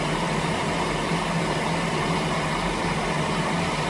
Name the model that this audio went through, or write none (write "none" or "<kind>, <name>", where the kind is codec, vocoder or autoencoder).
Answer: none